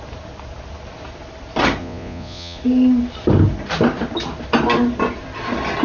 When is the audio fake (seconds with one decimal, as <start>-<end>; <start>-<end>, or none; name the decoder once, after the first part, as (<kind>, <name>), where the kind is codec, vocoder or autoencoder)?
1.8-2.6 (vocoder, Vocos)